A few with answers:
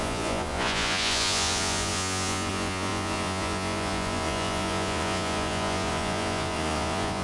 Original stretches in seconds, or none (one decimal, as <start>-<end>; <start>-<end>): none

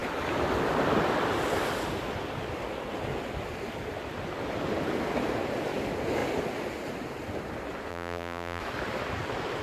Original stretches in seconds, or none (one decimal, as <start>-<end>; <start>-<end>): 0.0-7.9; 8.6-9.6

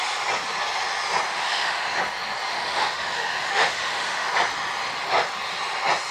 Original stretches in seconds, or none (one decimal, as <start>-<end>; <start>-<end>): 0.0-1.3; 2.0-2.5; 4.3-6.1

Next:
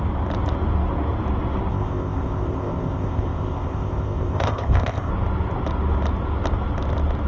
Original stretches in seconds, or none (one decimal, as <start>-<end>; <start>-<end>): 0.0-1.7; 5.1-7.3